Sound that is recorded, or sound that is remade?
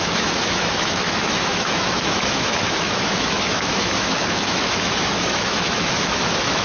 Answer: remade